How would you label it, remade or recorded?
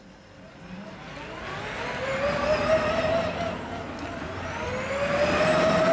recorded